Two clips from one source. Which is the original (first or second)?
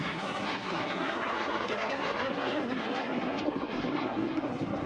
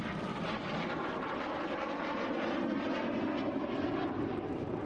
second